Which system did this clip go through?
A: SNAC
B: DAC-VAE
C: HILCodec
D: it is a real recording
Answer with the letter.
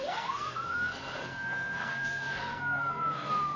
A